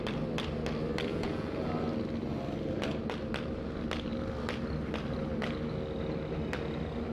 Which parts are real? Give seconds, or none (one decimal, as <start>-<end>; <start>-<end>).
0.0-1.1; 1.7-7.1